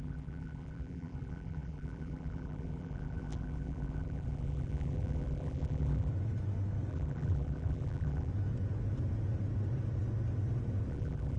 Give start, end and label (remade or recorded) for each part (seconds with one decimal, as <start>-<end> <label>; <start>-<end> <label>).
0.0-6.1 remade; 6.1-6.9 recorded; 6.9-8.3 remade; 8.3-10.9 recorded; 10.9-11.4 remade